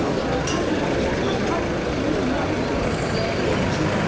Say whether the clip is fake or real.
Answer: real